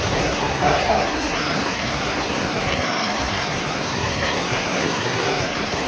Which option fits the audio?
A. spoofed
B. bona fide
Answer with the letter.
A